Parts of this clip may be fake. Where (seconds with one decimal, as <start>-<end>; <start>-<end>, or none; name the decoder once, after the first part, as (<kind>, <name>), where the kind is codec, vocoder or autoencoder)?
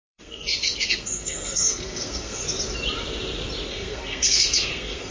0.0-2.4 (codec, SNAC); 3.7-5.1